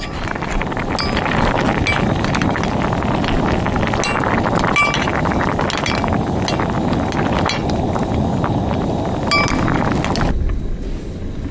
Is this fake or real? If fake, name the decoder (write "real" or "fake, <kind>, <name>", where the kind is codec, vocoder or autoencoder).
real